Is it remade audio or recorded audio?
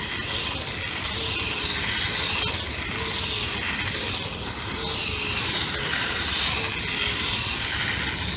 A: recorded